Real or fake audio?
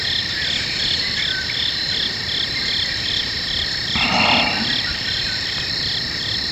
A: real